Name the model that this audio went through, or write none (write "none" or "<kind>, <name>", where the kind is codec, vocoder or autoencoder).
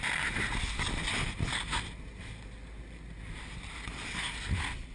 none